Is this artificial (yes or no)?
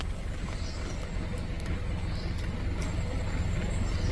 no